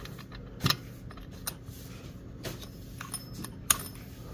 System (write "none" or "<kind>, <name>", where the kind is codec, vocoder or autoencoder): none